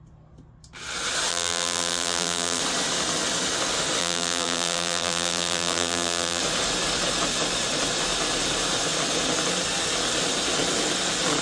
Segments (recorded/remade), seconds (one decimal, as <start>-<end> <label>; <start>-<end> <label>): 0.0-1.3 recorded; 1.3-2.6 remade; 2.6-4.0 recorded; 4.0-6.4 remade; 6.4-11.4 recorded